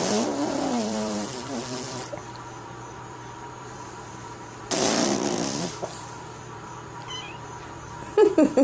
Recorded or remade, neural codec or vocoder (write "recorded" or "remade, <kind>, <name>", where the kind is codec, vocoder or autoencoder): remade, vocoder, BigVGAN v2